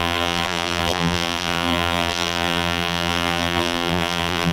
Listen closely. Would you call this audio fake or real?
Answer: fake